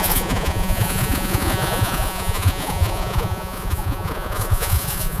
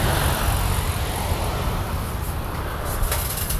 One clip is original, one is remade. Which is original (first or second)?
second